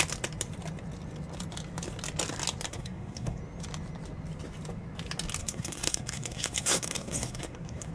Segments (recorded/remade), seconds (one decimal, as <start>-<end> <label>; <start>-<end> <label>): 0.0-2.7 recorded; 2.7-3.4 remade; 3.4-5.4 recorded; 5.4-7.9 remade